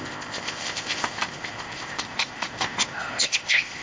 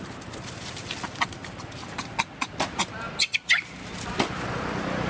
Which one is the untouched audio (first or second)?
second